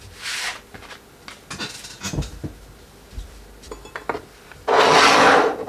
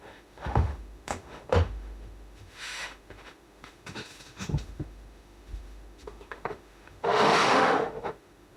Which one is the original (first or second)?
first